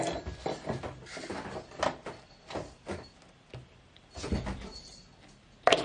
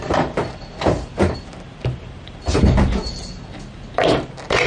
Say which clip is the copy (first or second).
second